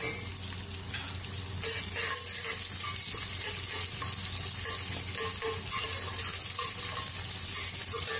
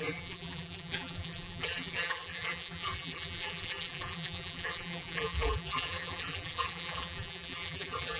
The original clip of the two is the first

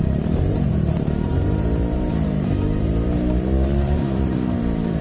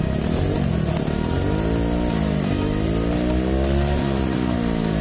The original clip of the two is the second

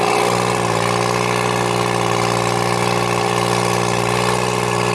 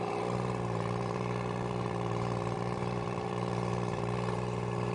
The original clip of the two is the first